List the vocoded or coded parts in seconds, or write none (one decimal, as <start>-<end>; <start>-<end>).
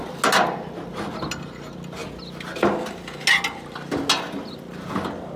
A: none